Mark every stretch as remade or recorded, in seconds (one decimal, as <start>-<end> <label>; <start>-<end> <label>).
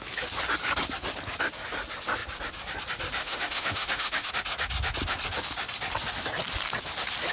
0.0-3.2 recorded; 3.2-4.3 remade; 4.3-7.3 recorded